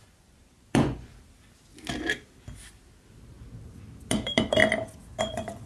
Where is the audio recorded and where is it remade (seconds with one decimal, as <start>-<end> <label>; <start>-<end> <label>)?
0.0-1.1 remade; 1.1-4.1 recorded; 4.1-4.6 remade; 4.6-5.2 recorded; 5.2-5.7 remade